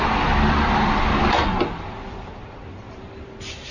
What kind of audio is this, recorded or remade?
remade